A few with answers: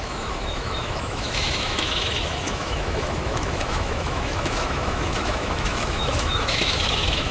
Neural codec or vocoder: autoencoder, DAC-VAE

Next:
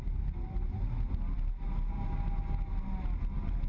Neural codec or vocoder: none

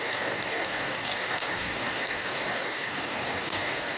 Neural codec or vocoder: codec, DAC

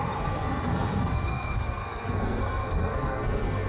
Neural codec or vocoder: codec, SNAC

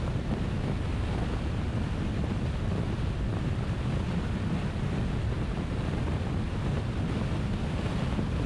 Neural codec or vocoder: none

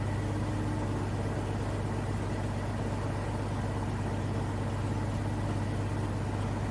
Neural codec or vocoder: none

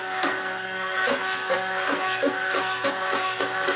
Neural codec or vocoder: codec, SNAC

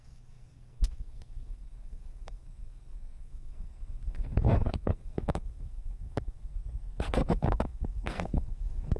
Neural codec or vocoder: codec, SNAC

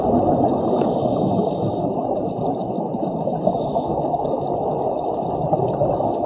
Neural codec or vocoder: none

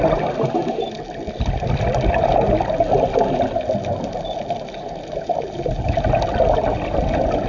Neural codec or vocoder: none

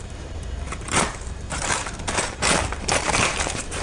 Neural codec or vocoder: vocoder, BigVGAN v2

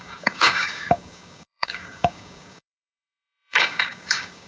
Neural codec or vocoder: codec, DAC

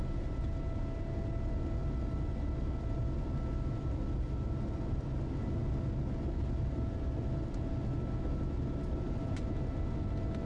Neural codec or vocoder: none